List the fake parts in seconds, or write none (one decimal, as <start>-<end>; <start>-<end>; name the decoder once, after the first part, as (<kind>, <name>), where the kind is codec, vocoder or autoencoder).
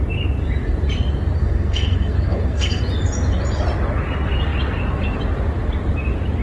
1.4-2.8 (codec, SNAC)